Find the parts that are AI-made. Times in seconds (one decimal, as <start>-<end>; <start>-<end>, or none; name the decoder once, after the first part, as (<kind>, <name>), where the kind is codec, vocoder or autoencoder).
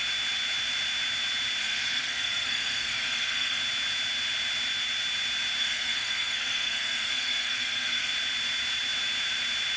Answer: 1.6-3.6 (codec, SNAC); 5.6-8.1